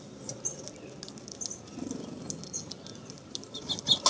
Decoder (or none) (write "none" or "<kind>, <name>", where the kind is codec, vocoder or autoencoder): none